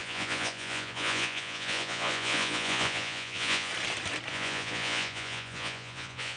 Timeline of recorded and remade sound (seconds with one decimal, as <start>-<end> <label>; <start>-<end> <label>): 0.0-3.7 remade; 3.7-4.3 recorded; 4.3-6.4 remade